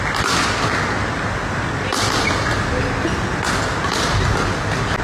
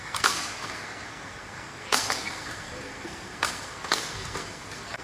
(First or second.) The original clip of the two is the first